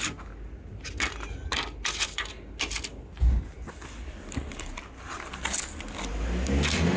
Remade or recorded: recorded